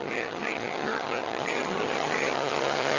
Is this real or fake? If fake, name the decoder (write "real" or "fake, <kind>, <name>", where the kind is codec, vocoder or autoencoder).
fake, vocoder, HiFi-GAN